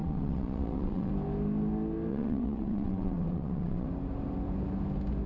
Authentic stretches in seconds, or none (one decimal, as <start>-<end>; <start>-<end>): 1.1-2.1; 3.9-5.3